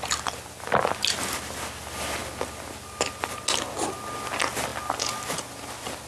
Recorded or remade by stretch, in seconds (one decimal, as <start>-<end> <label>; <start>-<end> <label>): 0.0-6.1 recorded